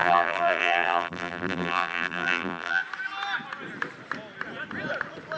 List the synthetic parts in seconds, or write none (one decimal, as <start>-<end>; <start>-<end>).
0.0-2.8